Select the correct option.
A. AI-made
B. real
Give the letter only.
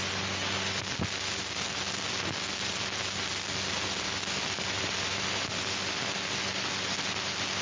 B